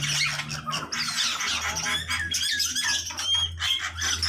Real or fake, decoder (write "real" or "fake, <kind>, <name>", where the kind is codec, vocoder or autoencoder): real